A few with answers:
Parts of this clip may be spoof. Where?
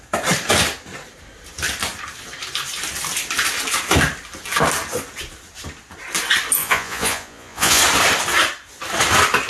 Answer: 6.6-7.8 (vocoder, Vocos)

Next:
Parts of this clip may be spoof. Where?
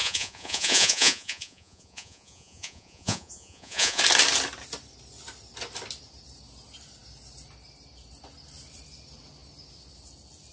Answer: 0.0-4.0 (vocoder, Vocos)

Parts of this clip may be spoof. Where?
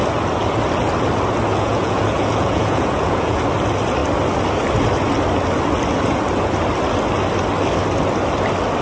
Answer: 1.5-3.4 (vocoder, Vocos)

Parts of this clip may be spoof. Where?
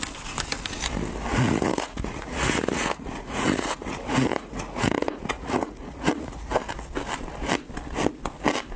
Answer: 1.3-6.5 (vocoder, Vocos)